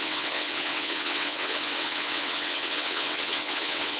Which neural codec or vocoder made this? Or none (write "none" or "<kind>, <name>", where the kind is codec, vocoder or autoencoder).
vocoder, WaveNeXt